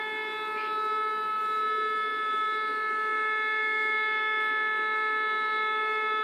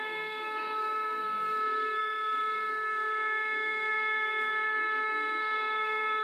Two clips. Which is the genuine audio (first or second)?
first